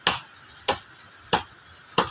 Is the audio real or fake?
real